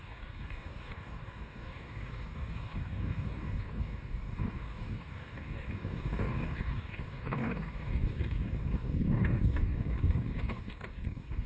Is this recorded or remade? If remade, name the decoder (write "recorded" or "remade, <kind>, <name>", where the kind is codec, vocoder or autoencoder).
remade, codec, DAC